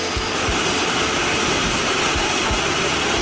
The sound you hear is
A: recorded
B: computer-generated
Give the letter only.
A